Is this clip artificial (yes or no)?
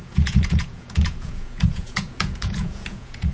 yes